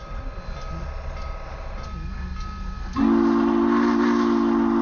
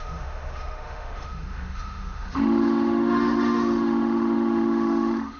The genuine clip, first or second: first